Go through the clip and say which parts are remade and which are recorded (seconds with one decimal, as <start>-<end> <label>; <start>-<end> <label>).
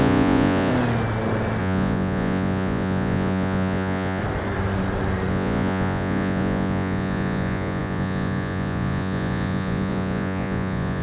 0.0-0.7 remade; 0.7-1.6 recorded; 1.6-4.2 remade; 4.2-5.3 recorded; 5.3-11.0 remade